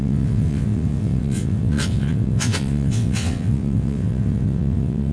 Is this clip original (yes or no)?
no